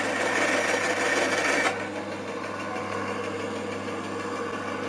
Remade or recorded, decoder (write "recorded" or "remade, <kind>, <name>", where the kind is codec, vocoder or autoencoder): recorded